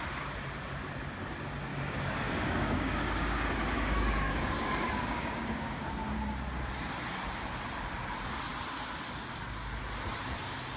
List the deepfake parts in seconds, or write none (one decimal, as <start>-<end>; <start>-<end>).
1.7-6.2